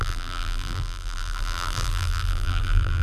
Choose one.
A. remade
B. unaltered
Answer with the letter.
A